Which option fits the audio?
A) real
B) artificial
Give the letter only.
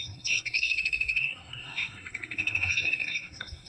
B